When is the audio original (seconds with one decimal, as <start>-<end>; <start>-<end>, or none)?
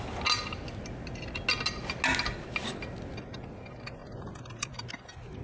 0.0-5.4